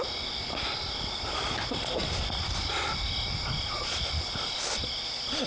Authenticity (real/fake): real